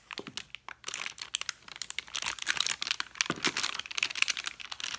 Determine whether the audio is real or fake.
real